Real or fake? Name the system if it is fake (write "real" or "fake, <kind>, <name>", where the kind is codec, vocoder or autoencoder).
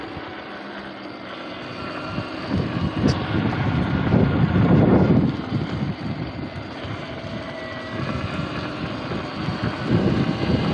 real